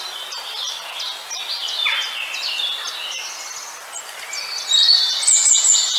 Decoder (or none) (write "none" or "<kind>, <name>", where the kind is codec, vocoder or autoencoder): none